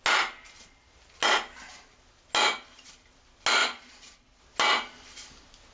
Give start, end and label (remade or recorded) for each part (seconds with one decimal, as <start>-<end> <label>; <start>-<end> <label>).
0.0-3.6 recorded; 3.6-4.4 remade; 4.4-5.7 recorded